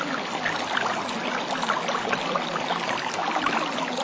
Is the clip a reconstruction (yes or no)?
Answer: no